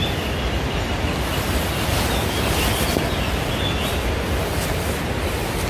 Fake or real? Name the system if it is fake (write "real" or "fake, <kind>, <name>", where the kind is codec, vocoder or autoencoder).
real